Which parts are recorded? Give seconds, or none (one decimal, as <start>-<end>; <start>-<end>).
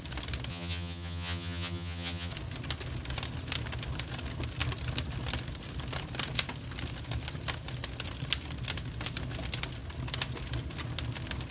0.0-0.5; 2.3-11.5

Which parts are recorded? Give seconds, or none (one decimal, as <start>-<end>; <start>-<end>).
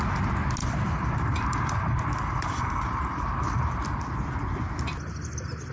0.0-0.6; 4.0-5.7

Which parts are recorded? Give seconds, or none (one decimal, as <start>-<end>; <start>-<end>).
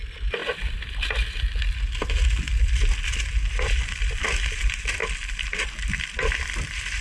0.4-2.6; 5.0-6.4